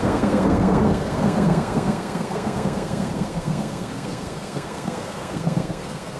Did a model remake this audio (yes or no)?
yes